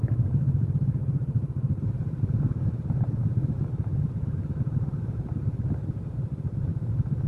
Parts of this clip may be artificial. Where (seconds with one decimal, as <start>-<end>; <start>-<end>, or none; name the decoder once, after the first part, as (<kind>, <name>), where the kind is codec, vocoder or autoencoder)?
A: 0.0-6.7 (vocoder, BigVGAN v2)